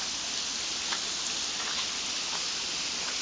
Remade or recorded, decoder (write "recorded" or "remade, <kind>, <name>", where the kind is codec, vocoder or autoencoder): recorded